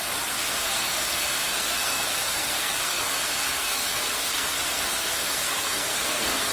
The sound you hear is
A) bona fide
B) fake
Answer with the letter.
B